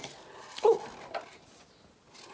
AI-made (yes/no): no